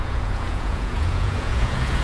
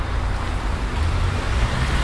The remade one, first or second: first